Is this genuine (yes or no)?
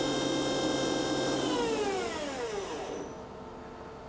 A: yes